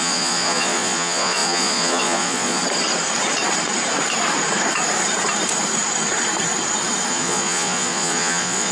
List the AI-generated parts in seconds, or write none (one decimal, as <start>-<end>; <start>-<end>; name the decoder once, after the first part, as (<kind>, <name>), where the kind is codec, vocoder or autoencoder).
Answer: 0.0-2.6 (vocoder, Vocos); 7.1-8.7